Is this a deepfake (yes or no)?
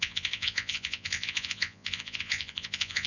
yes